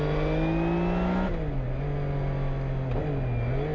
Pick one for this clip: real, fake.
real